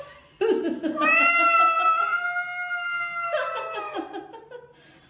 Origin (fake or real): real